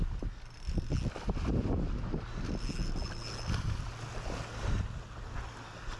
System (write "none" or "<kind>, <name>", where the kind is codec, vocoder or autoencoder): none